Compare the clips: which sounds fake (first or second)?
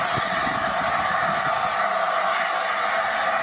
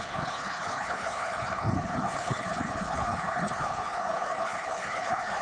second